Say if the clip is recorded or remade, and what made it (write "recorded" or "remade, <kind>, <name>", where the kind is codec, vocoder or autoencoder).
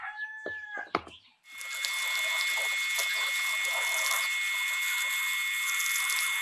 recorded